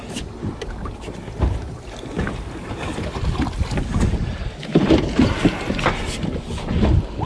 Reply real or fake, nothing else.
real